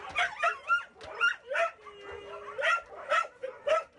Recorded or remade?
recorded